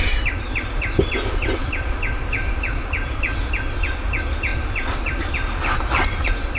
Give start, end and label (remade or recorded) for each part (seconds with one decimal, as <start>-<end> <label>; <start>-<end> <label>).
0.0-0.7 remade; 0.7-6.6 recorded